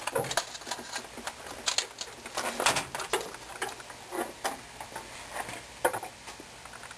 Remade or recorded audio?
recorded